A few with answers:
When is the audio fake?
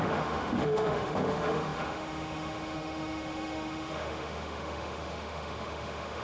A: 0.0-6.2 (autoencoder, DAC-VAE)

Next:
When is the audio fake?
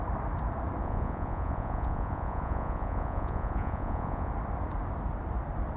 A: 0.8-4.3 (vocoder, Vocos)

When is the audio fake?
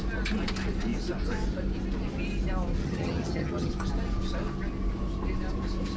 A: 2.8-3.7 (vocoder, HiFi-GAN)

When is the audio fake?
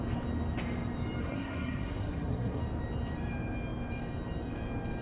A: 1.2-2.6 (codec, SNAC)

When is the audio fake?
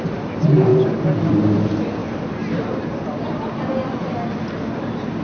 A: 0.0-2.0 (vocoder, BigVGAN v2); 3.8-5.2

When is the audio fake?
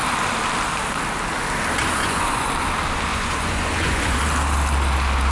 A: 2.0-2.5 (vocoder, Vocos); 3.1-4.2